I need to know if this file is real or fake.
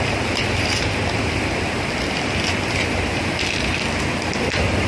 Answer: fake